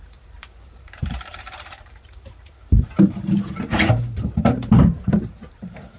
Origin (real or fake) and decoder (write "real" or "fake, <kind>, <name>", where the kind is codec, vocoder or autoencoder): fake, vocoder, BigVGAN v2